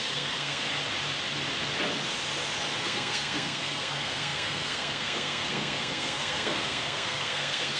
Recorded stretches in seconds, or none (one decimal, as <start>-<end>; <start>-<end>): 0.7-2.8